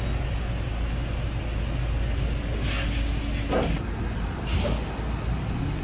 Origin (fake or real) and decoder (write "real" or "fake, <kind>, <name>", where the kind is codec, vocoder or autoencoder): real